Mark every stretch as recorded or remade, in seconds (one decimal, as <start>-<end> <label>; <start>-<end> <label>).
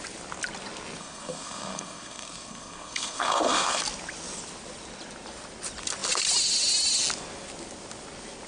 0.0-1.0 recorded; 1.0-3.8 remade; 3.8-8.5 recorded